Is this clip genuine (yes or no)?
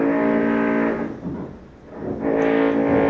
yes